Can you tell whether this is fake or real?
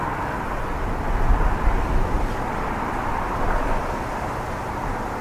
real